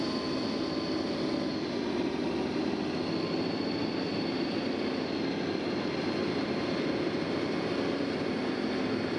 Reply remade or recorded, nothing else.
recorded